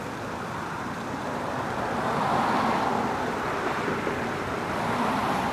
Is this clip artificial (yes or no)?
yes